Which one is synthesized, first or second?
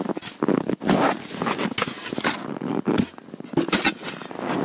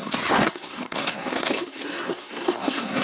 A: second